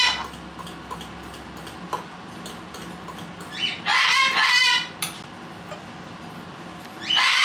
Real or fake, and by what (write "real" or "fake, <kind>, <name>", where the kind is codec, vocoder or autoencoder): real